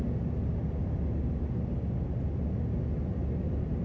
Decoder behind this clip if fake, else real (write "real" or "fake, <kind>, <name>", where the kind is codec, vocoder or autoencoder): real